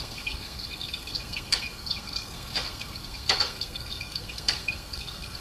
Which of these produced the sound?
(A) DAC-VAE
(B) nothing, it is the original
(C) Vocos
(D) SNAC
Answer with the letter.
D